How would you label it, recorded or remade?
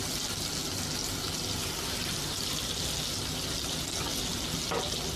recorded